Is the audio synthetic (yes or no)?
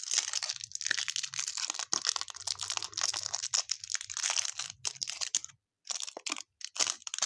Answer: no